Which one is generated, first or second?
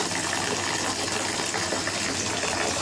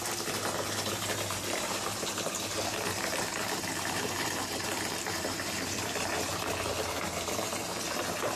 second